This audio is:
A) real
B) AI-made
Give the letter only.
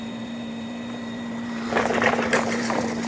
B